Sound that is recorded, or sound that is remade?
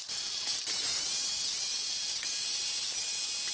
recorded